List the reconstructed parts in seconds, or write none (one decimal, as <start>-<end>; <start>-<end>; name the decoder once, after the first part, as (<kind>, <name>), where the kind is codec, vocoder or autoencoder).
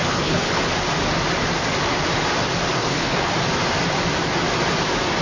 0.0-0.6 (codec, HILCodec); 2.8-3.3